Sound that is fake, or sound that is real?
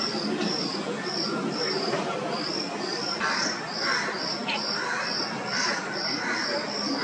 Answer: real